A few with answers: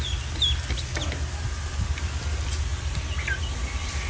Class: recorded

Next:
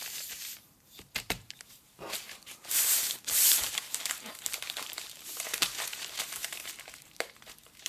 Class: remade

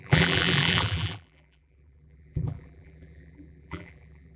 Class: remade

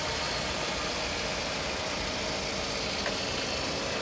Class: recorded